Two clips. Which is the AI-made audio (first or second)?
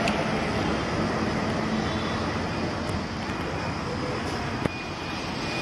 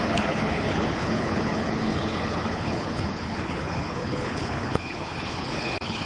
second